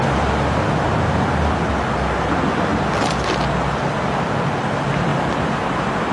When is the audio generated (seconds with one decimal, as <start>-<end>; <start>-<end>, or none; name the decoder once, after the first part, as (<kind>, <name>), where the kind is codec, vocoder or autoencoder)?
none